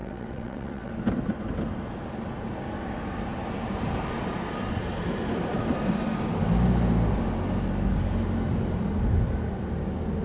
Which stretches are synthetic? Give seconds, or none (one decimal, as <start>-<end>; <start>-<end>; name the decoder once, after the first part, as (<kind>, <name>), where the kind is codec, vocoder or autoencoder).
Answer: 0.0-0.9 (vocoder, WaveNeXt)